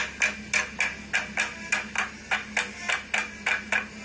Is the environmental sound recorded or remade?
recorded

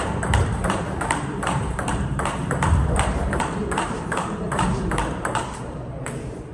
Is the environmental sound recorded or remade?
remade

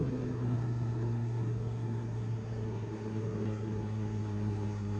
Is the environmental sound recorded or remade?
remade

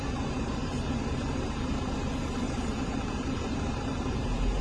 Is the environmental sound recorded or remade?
remade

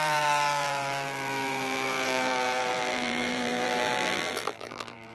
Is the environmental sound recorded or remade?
remade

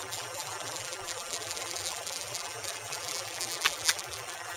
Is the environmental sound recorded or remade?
remade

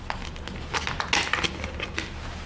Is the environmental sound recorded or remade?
recorded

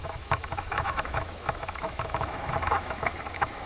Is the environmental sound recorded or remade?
remade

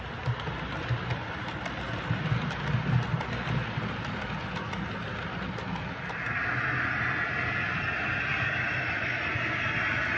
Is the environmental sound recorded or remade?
recorded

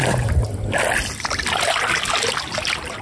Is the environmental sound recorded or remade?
recorded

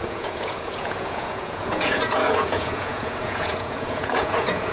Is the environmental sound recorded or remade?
remade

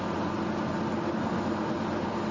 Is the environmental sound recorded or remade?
recorded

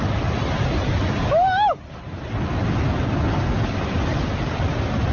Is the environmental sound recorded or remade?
recorded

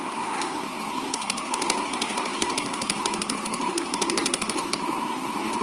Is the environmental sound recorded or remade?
remade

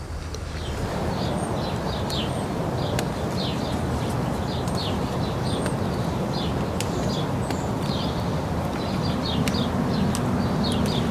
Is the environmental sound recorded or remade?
recorded